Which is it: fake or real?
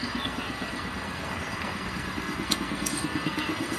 fake